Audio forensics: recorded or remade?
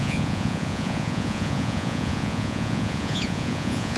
remade